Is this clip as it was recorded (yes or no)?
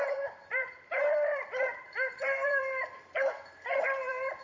no